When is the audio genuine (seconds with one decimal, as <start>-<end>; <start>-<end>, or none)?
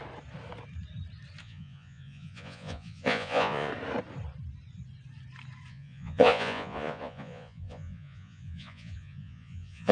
0.0-1.4; 3.7-5.7